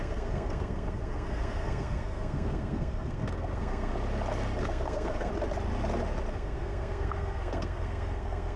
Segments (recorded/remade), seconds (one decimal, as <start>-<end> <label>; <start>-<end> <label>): 0.0-3.9 remade; 3.9-4.6 recorded; 4.6-5.3 remade; 5.3-6.3 recorded; 6.3-8.6 remade